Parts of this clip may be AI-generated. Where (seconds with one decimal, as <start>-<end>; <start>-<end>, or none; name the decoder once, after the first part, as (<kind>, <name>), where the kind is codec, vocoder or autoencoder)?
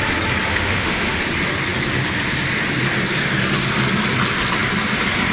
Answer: 0.5-1.2 (autoencoder, DAC-VAE)